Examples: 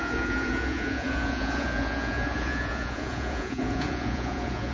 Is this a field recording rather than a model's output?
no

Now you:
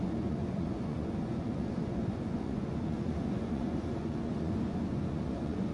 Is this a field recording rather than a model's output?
no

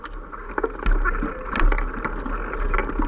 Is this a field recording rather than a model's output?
yes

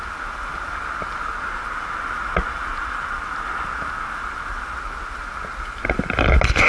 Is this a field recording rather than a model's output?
yes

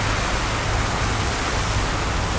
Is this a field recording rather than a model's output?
yes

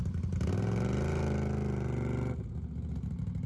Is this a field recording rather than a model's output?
yes